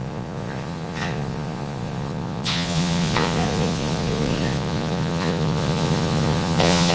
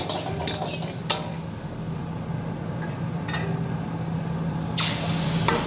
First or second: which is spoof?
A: first